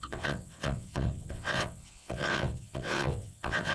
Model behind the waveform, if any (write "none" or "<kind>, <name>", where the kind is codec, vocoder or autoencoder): vocoder, WaveNeXt